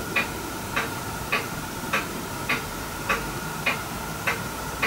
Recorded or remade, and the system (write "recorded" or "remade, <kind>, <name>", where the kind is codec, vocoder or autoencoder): remade, vocoder, BigVGAN v2